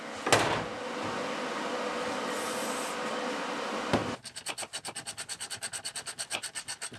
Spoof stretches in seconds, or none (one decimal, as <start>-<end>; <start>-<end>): none

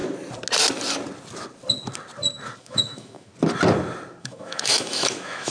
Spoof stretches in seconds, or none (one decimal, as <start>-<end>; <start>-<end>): 2.6-3.3; 4.2-5.5